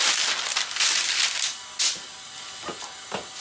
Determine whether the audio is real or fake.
real